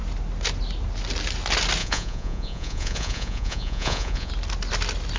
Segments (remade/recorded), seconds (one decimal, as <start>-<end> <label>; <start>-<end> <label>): 0.0-1.8 recorded; 1.8-4.3 remade; 4.3-5.2 recorded